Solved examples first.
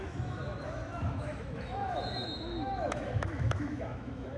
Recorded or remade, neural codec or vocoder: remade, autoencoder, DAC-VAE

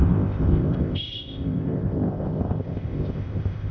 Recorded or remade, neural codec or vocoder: remade, codec, ZipCodec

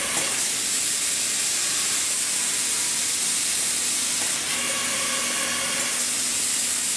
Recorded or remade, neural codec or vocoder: recorded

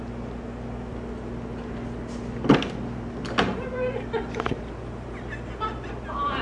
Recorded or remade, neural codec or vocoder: recorded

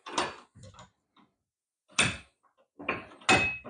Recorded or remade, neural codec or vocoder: recorded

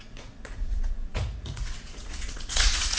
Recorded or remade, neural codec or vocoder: remade, vocoder, Vocos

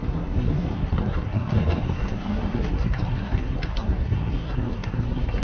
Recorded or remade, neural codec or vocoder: remade, codec, SNAC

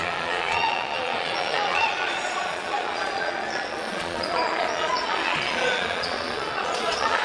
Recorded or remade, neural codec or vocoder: remade, vocoder, Vocos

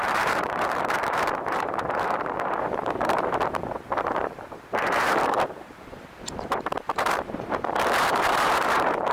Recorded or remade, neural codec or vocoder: remade, vocoder, BigVGAN v2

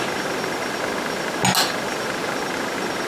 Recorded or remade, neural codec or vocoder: recorded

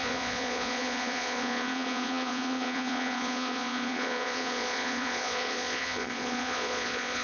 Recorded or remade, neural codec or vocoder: remade, vocoder, Vocos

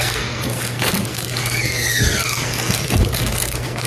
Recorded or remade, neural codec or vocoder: remade, codec, SNAC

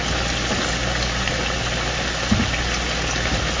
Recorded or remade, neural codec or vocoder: recorded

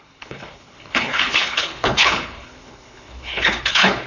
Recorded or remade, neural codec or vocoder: remade, codec, HILCodec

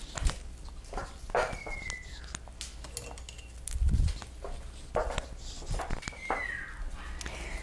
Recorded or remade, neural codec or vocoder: recorded